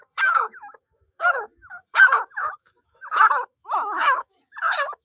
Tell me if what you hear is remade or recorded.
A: remade